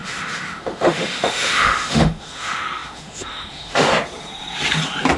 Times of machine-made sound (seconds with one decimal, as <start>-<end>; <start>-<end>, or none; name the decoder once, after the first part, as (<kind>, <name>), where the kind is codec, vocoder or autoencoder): 0.0-3.9 (autoencoder, DAC-VAE)